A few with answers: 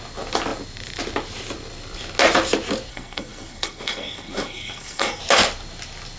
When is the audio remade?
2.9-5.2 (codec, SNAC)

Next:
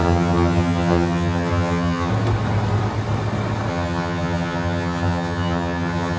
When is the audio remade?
0.0-2.1 (vocoder, HiFi-GAN); 3.7-6.2

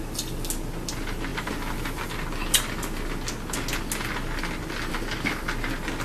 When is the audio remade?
none

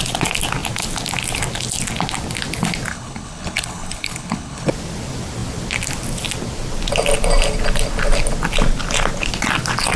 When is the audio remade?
2.9-4.7 (codec, HILCodec)